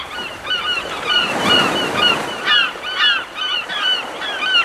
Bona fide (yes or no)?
no